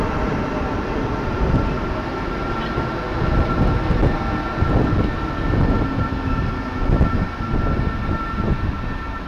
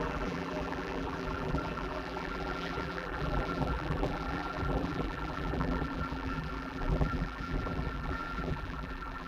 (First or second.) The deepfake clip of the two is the second